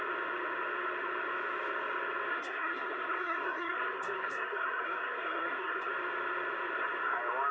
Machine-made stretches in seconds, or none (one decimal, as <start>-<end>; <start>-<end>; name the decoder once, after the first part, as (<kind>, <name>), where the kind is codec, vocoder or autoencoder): 2.3-5.9 (codec, SNAC)